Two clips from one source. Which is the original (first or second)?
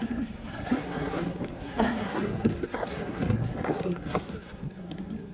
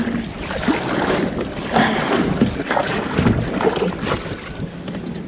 second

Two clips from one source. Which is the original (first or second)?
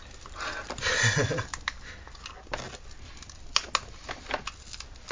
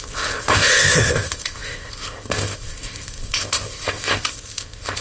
first